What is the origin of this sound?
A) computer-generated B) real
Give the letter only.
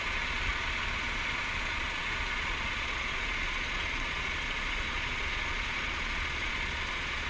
A